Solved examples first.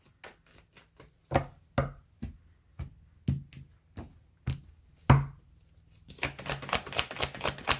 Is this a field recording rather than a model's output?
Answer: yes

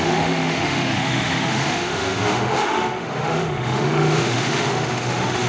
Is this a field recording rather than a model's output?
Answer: no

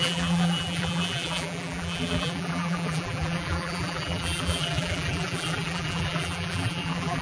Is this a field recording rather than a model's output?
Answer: no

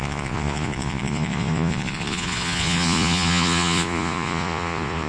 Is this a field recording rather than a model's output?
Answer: no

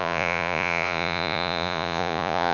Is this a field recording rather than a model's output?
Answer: no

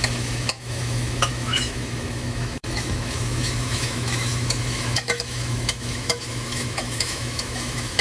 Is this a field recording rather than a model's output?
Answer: no